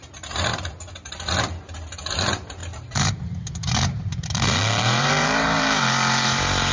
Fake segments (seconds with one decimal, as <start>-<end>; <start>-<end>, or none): 2.6-6.7